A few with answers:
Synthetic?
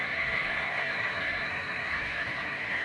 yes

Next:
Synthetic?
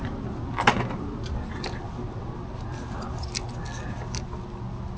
no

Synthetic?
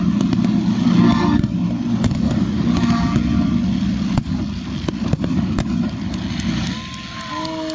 no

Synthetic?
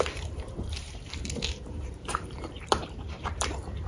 yes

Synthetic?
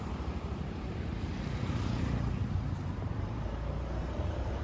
yes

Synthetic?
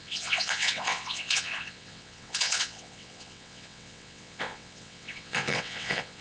yes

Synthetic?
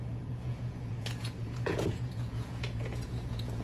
yes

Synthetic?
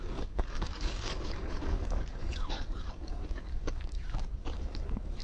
yes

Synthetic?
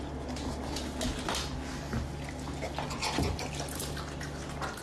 no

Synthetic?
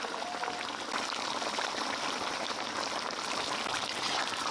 no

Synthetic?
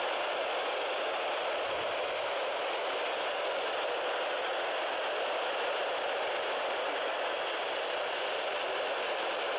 no